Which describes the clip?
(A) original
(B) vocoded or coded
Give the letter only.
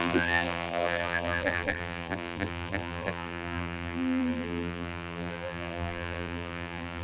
B